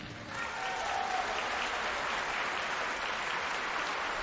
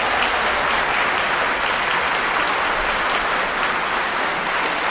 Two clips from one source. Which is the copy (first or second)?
first